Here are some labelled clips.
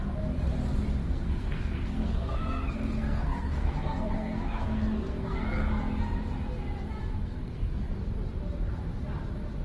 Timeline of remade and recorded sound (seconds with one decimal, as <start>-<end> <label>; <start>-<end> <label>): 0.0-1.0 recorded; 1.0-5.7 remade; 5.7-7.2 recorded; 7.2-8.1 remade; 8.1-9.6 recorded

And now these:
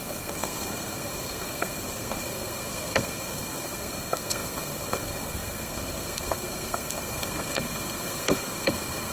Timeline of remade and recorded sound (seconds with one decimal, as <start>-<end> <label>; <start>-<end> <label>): 0.0-9.1 remade

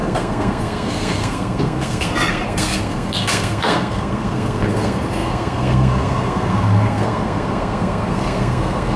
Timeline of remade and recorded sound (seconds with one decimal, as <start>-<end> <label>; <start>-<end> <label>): 0.0-9.0 remade

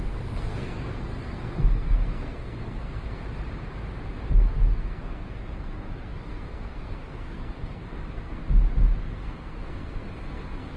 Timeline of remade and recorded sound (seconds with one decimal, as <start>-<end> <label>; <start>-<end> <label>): 0.0-3.2 remade; 3.2-4.3 recorded; 4.3-8.4 remade; 8.4-9.0 recorded; 9.0-10.8 remade